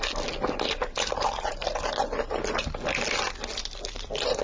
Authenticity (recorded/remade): recorded